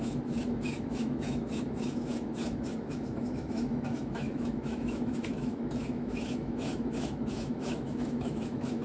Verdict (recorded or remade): remade